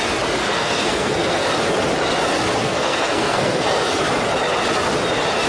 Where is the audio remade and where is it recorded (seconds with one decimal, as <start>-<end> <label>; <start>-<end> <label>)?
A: 0.0-0.4 recorded; 0.4-1.5 remade; 1.5-2.6 recorded; 2.6-4.0 remade; 4.0-5.5 recorded